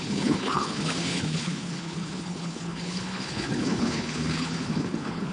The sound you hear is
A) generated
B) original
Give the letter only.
A